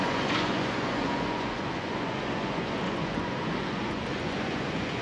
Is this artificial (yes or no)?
yes